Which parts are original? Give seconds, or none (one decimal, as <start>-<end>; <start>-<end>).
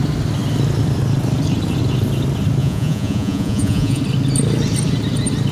0.0-2.6; 4.0-5.5